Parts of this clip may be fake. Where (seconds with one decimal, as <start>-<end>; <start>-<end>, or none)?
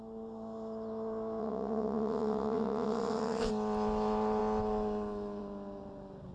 1.4-3.5